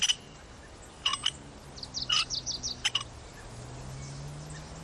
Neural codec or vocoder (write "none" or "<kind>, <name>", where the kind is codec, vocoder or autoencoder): none